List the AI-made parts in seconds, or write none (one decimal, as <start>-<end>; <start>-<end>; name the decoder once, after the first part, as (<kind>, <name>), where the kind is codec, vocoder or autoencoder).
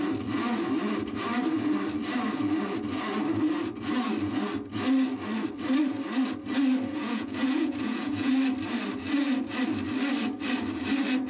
6.9-8.3 (vocoder, Vocos)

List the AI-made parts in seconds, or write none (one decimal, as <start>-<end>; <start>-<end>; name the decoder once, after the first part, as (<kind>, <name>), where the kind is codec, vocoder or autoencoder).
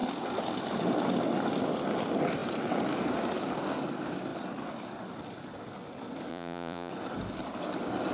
6.3-6.9 (vocoder, Vocos)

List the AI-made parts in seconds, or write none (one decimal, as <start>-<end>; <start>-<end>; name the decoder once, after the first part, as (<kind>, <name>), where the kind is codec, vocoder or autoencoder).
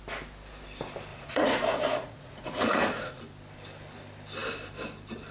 1.1-3.2 (vocoder, Vocos)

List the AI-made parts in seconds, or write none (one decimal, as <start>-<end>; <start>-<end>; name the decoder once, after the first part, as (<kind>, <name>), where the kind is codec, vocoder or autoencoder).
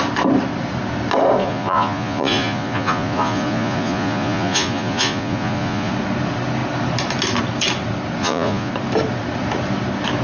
1.4-5.9 (vocoder, Vocos); 8.2-8.7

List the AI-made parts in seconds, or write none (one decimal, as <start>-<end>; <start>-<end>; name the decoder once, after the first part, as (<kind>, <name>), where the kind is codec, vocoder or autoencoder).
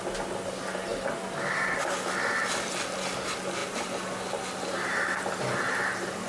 none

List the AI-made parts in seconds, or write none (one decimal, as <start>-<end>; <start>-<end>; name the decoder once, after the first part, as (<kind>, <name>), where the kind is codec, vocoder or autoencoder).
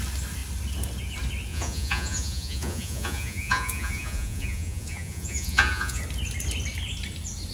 1.5-6.0 (vocoder, Vocos)